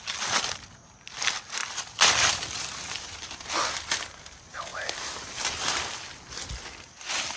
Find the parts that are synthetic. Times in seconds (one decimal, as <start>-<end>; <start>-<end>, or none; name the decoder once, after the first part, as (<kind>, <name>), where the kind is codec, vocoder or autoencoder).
none

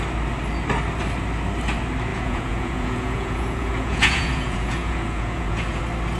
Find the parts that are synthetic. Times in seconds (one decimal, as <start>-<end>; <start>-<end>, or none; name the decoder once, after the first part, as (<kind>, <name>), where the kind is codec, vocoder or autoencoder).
2.1-5.8 (vocoder, Vocos)